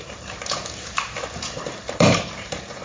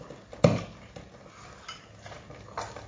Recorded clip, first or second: second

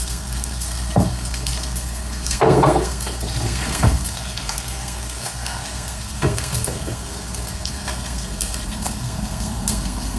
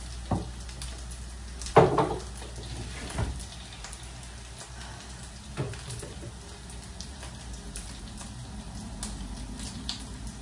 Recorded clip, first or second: second